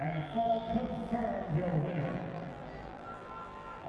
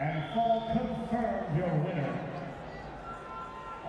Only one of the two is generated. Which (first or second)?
first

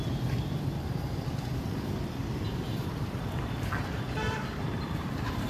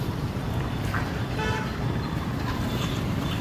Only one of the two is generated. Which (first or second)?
first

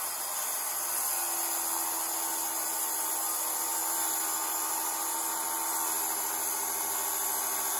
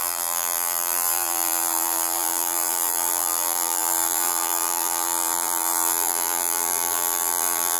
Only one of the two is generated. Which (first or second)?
second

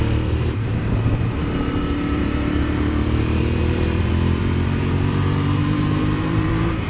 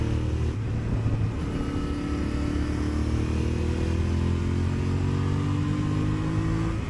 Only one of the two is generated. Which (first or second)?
first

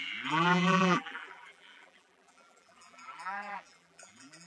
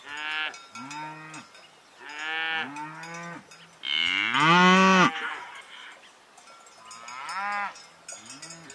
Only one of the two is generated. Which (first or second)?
first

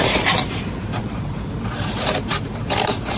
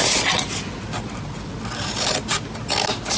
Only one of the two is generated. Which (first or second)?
first